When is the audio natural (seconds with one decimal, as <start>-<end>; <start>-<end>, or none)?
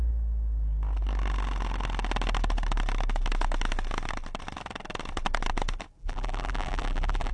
0.0-6.0